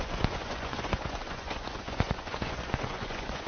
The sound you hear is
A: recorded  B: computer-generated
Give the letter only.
B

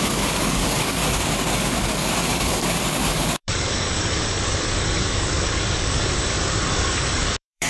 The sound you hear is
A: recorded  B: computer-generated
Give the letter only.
B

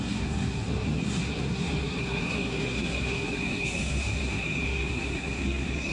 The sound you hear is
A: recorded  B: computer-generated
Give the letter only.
B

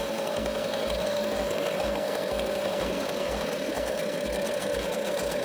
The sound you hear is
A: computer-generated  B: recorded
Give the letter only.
A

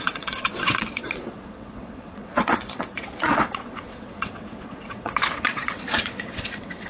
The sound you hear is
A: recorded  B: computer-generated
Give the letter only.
B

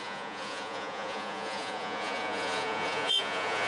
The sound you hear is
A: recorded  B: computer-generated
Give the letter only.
B